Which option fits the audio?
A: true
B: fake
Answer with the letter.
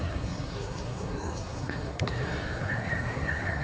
B